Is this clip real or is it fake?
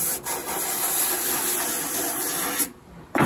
real